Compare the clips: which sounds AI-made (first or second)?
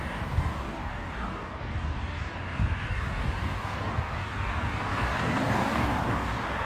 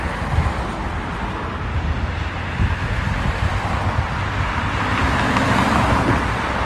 first